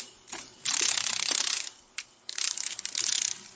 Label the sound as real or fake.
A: real